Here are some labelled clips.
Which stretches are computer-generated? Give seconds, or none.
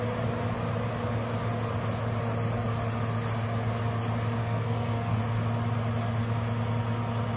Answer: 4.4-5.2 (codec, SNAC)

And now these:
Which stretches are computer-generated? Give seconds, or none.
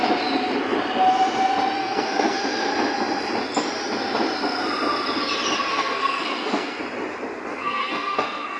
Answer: 1.8-2.4 (codec, SNAC); 5.7-6.8; 7.5-8.6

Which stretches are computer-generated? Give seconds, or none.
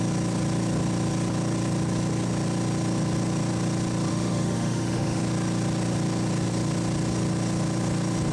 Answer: 4.1-5.2 (autoencoder, DAC-VAE)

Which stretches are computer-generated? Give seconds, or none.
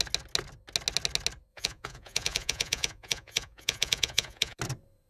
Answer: 1.5-4.6 (vocoder, Vocos)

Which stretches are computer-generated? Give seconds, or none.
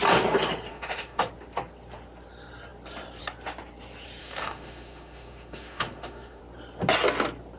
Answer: 0.7-1.3 (autoencoder, DAC-VAE); 4.2-6.4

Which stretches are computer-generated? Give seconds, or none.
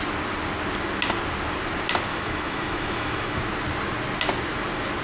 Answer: 2.1-3.4 (autoencoder, DAC-VAE)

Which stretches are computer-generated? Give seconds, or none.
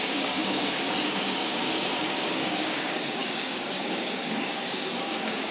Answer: 0.0-5.5 (codec, DAC)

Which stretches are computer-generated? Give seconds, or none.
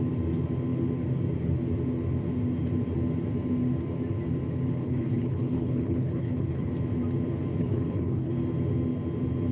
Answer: 4.8-6.7 (codec, HILCodec); 7.6-8.3